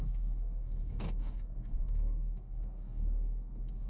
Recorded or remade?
remade